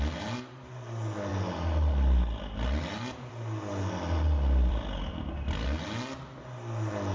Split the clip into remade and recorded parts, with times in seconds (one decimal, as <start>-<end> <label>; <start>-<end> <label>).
0.0-7.1 recorded